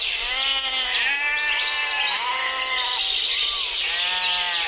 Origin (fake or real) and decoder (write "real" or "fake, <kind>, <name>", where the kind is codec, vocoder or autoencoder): real